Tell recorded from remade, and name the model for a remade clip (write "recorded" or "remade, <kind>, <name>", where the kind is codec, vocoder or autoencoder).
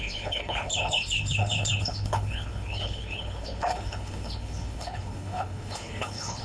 remade, codec, HILCodec